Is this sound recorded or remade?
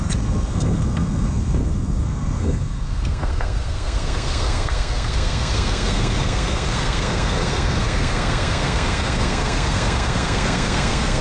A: remade